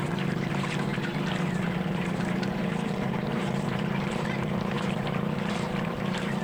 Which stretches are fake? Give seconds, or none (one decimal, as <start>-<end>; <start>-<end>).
0.0-0.9; 1.7-6.4